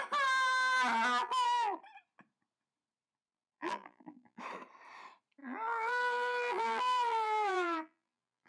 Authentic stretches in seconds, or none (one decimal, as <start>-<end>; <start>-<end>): 0.0-1.2; 1.8-3.3; 4.4-5.4